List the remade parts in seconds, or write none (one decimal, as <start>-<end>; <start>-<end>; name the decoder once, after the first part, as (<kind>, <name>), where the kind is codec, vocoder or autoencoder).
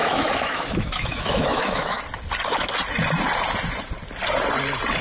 0.0-2.0 (autoencoder, DAC-VAE)